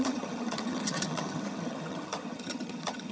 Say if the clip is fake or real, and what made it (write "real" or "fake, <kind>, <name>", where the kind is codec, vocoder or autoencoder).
fake, vocoder, HiFi-GAN